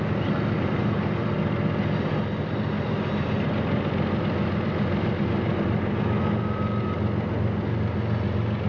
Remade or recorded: recorded